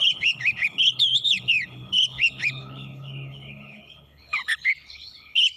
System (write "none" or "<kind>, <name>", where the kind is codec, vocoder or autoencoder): codec, HILCodec